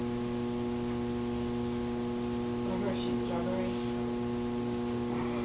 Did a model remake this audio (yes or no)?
no